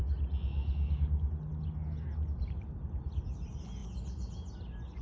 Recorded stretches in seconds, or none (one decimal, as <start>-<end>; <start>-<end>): 0.0-5.0